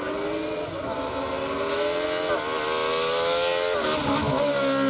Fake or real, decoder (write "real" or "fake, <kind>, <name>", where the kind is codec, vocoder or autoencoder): real